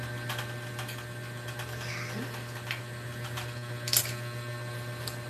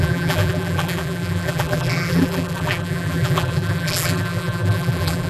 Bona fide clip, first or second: first